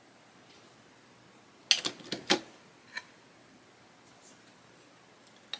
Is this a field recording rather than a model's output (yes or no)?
yes